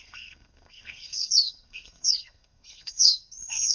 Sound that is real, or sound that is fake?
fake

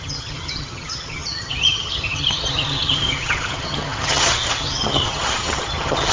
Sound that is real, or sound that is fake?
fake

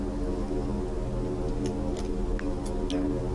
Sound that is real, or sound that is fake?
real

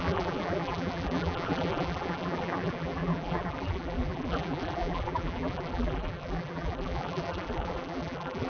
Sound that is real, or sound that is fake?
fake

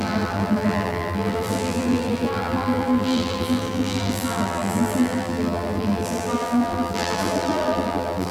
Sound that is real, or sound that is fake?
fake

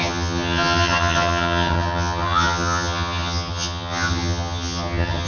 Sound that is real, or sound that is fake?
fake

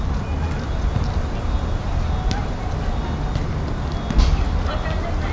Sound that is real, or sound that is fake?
real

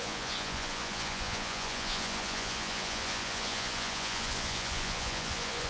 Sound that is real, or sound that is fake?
fake